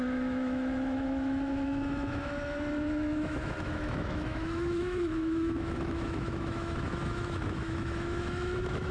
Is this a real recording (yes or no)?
no